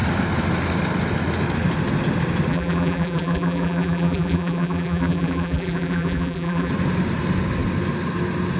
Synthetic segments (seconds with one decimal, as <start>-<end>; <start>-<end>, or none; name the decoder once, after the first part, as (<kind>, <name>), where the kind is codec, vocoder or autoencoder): 2.5-6.7 (vocoder, BigVGAN v2)

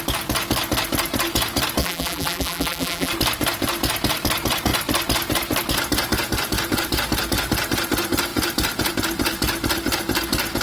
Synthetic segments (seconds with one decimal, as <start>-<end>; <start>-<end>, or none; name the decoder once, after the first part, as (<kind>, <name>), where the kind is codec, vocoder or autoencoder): 1.8-3.1 (vocoder, BigVGAN v2)